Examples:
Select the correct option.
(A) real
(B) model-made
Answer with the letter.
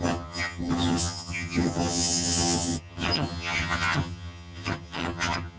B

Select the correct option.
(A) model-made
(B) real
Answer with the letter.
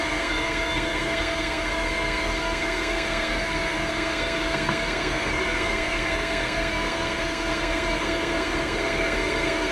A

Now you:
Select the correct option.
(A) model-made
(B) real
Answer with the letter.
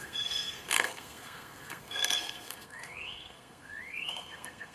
A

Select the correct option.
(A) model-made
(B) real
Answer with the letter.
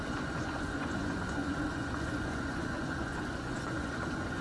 A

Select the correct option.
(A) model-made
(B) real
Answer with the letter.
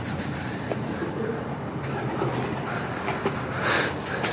B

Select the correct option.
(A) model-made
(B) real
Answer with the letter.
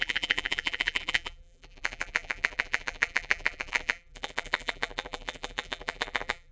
A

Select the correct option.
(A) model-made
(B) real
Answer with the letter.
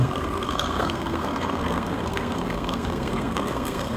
A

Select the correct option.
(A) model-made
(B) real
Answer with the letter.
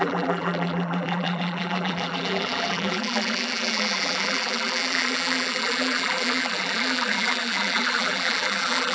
A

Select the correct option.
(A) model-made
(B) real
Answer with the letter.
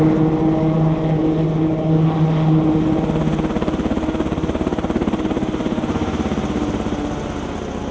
B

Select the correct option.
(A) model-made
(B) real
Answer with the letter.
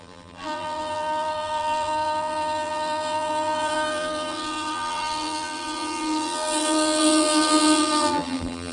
A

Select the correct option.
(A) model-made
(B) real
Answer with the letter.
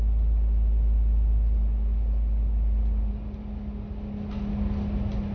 B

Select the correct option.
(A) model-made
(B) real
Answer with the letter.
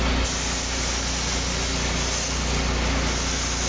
B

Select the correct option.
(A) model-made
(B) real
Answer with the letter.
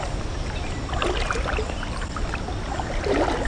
B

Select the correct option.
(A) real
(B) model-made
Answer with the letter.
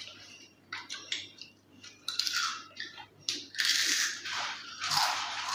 B